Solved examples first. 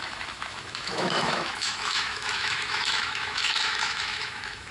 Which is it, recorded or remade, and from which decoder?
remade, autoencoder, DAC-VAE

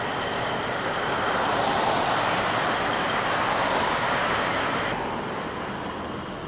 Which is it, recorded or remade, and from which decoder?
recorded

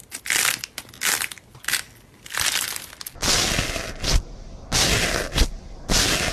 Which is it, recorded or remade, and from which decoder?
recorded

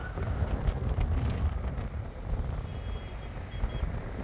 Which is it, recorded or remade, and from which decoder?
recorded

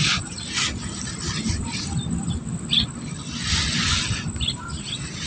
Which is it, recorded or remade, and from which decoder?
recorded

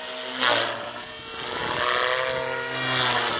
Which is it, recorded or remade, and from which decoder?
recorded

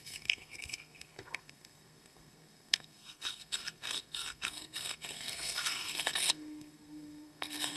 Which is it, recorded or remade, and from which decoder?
remade, codec, SNAC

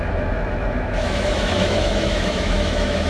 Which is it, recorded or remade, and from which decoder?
remade, autoencoder, DAC-VAE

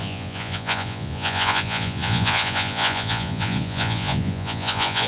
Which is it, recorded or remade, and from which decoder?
remade, vocoder, Vocos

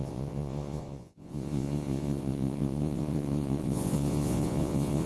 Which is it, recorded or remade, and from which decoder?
remade, vocoder, Vocos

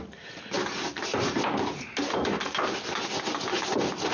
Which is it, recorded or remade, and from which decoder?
recorded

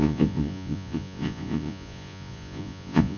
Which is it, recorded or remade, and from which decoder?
remade, vocoder, Vocos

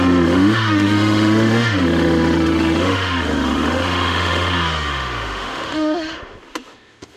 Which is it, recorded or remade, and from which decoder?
remade, autoencoder, DAC-VAE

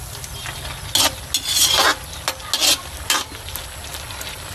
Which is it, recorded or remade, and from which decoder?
recorded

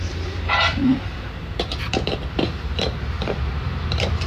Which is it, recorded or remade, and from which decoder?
remade, vocoder, BigVGAN v2